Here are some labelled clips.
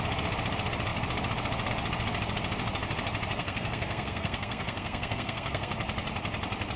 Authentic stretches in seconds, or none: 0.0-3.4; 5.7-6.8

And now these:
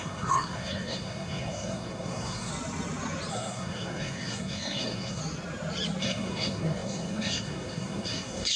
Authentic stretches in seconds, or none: 2.5-3.3; 5.2-6.0

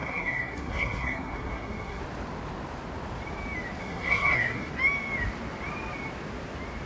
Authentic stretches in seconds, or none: 2.0-3.8; 4.7-6.9

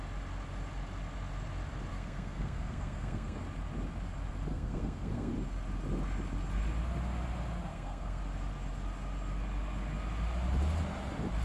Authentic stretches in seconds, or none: 0.0-1.9; 3.4-4.5; 5.3-7.7; 8.2-11.4

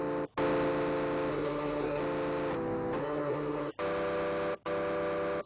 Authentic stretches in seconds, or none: 0.0-1.3; 2.0-3.0; 3.7-5.5

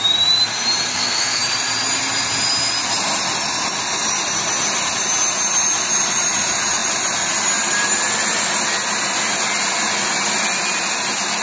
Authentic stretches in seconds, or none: 0.0-0.9; 1.4-11.4